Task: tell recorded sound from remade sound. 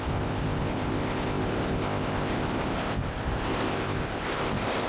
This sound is remade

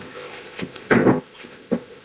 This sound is remade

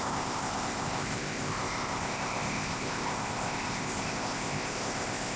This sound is remade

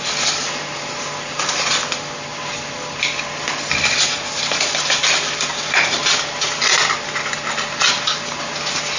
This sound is recorded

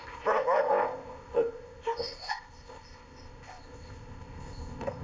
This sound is remade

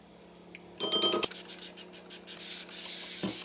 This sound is recorded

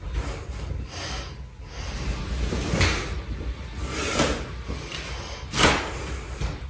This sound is recorded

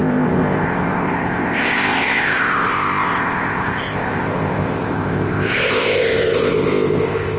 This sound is remade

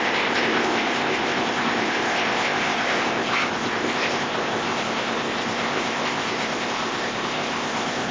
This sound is remade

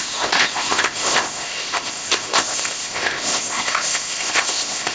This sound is remade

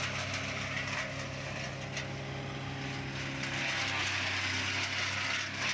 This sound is recorded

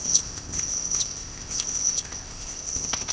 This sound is remade